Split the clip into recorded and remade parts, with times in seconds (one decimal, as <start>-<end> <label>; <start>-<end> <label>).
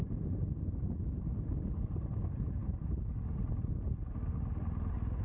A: 0.0-5.2 recorded